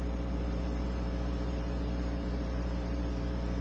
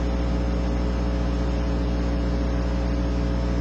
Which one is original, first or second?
second